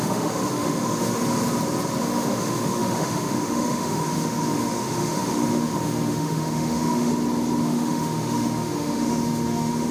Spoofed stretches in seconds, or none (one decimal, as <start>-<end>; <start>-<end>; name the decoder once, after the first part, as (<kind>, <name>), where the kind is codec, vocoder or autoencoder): 0.0-1.2 (autoencoder, DAC-VAE); 2.0-7.1; 7.6-9.9